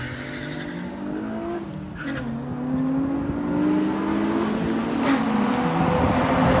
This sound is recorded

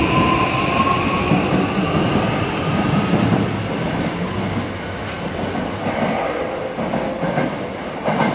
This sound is recorded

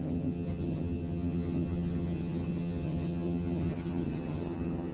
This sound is remade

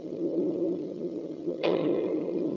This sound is remade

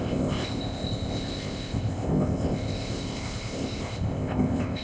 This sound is remade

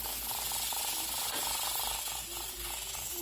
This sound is recorded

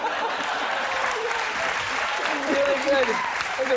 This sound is remade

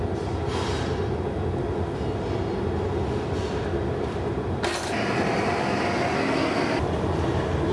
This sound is recorded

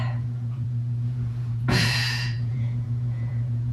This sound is remade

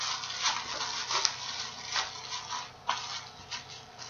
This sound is recorded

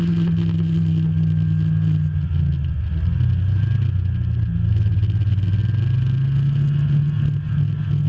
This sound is recorded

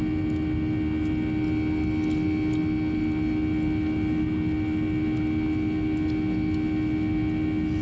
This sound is recorded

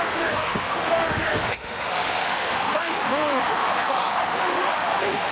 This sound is remade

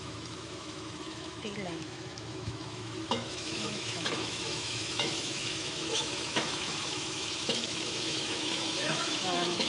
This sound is remade